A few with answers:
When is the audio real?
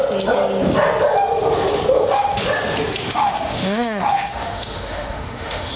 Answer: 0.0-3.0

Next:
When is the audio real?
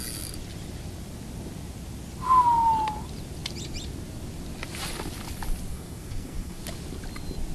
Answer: 0.0-5.7; 6.6-7.5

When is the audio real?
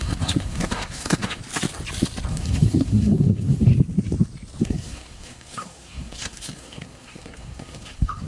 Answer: 1.4-2.3; 3.7-4.6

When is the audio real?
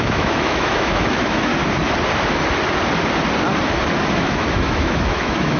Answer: 1.5-4.1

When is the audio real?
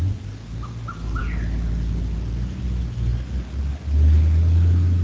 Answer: 0.0-5.0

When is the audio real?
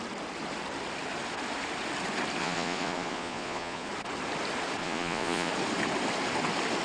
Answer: 0.0-2.4; 3.9-4.8; 5.5-6.8